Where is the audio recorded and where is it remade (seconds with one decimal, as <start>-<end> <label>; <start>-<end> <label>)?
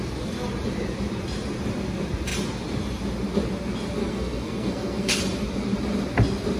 0.0-4.0 recorded; 4.0-5.2 remade; 5.2-6.6 recorded